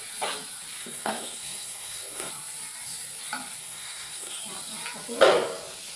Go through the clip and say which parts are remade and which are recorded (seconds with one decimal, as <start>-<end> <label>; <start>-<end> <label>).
0.0-0.8 recorded; 0.8-2.3 remade; 2.3-3.6 recorded; 3.6-4.4 remade; 4.4-6.0 recorded